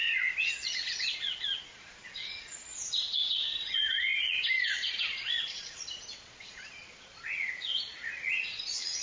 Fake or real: fake